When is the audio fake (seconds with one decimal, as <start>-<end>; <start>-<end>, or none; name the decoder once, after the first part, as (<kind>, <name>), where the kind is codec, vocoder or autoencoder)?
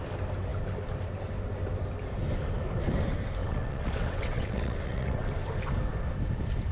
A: 3.4-5.3 (vocoder, WaveNeXt)